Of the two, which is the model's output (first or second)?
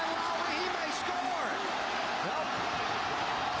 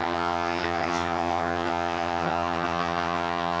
second